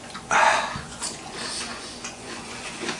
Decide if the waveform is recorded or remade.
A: remade